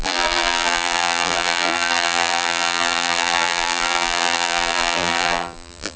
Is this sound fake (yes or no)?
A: yes